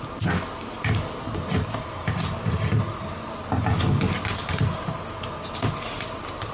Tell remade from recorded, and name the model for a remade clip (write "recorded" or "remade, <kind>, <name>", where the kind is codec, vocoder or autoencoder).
recorded